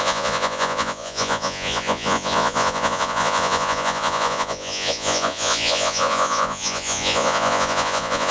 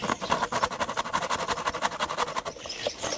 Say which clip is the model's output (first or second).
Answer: first